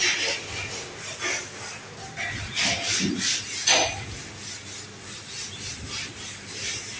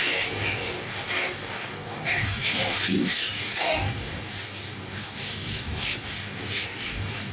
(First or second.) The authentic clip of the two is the first